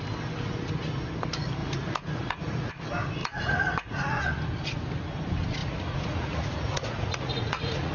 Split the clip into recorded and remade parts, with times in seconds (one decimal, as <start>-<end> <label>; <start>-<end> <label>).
0.0-1.6 recorded; 1.6-2.7 remade; 2.7-3.2 recorded; 3.2-4.2 remade; 4.2-5.6 recorded; 5.6-7.9 remade